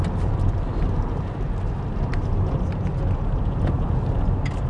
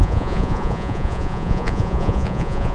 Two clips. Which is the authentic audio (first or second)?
first